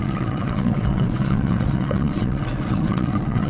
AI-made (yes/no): yes